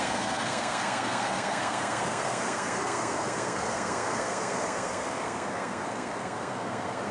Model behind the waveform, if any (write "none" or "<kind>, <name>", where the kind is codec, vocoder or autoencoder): codec, SNAC